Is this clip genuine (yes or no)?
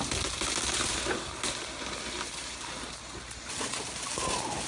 yes